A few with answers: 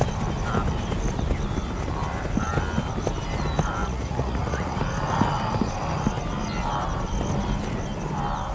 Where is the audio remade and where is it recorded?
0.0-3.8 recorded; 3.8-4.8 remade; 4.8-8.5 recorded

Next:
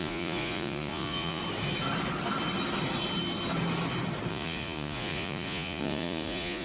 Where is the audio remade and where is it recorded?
0.0-1.4 remade; 1.4-4.3 recorded; 4.3-6.6 remade

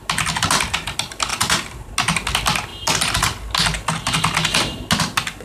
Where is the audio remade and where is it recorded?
0.0-1.3 recorded; 1.3-1.9 remade; 1.9-5.4 recorded